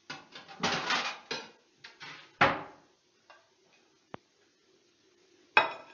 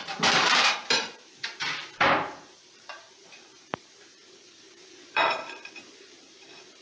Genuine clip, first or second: first